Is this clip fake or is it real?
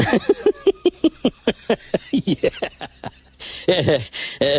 real